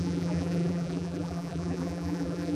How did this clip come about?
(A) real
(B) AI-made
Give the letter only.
B